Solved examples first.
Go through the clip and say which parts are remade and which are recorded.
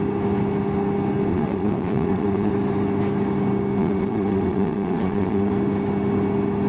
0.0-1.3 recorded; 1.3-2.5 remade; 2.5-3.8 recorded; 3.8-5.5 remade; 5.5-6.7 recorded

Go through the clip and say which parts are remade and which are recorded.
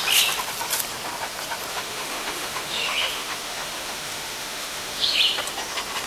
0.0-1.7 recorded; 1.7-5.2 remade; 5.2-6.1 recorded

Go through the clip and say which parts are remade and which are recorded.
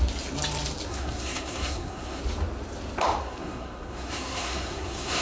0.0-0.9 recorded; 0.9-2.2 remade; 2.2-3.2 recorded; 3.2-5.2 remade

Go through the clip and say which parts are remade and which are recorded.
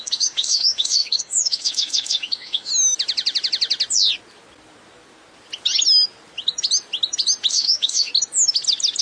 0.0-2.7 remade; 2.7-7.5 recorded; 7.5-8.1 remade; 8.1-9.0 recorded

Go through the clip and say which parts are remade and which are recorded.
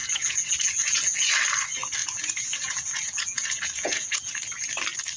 0.0-1.3 remade; 1.3-2.0 recorded; 2.0-4.3 remade; 4.3-5.2 recorded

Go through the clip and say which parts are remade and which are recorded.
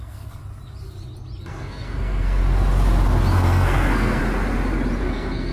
0.0-0.4 remade; 0.4-1.4 recorded; 1.4-2.4 remade; 2.4-3.3 recorded; 3.3-4.2 remade; 4.2-5.0 recorded; 5.0-5.5 remade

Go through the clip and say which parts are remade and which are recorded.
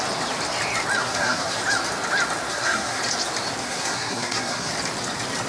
0.0-1.0 recorded; 1.0-1.6 remade; 1.6-2.5 recorded; 2.5-3.0 remade; 3.0-3.6 recorded; 3.6-4.7 remade; 4.7-5.5 recorded